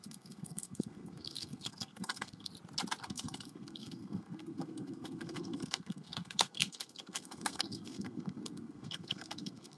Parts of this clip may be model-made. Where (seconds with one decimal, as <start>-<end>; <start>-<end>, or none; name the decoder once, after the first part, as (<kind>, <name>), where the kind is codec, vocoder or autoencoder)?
0.0-2.5 (codec, SNAC); 3.0-9.8